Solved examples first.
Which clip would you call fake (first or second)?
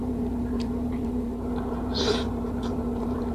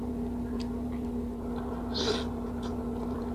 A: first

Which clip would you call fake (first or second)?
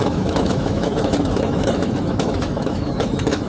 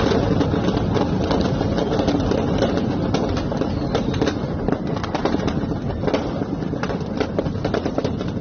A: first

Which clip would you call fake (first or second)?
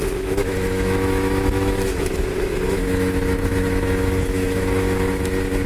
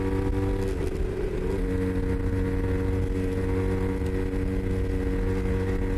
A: first